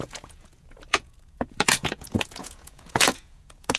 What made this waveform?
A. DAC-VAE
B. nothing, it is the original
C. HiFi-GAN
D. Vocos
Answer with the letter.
D